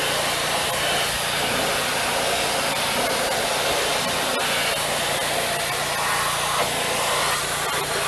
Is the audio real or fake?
real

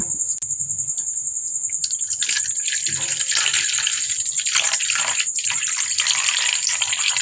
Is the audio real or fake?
real